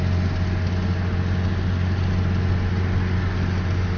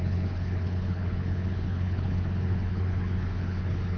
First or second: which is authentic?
first